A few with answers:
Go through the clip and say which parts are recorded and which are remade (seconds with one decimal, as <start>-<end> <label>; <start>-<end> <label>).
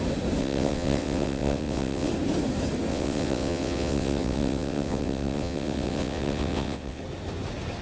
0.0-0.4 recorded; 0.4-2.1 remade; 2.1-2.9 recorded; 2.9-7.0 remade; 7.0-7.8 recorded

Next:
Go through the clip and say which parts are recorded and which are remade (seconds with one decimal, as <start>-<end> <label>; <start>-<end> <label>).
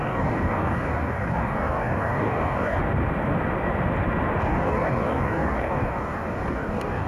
0.0-2.8 remade; 2.8-4.4 recorded; 4.4-7.1 remade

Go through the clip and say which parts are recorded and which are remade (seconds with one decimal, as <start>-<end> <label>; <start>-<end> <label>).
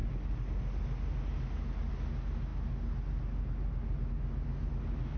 0.0-5.2 recorded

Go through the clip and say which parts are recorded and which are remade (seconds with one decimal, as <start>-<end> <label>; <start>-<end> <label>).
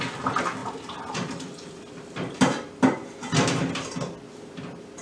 0.0-5.0 recorded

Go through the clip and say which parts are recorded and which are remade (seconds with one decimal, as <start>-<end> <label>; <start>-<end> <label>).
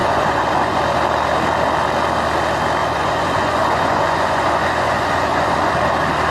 0.0-0.8 remade; 0.8-2.8 recorded; 2.8-5.7 remade; 5.7-6.3 recorded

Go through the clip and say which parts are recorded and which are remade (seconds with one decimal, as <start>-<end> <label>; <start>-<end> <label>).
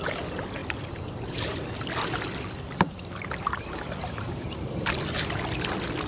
0.0-0.6 recorded; 0.6-4.3 remade; 4.3-6.1 recorded